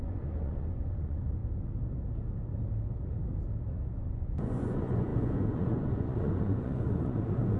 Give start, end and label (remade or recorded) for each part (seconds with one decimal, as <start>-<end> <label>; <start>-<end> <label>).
0.0-1.4 remade; 1.4-4.0 recorded; 4.0-7.6 remade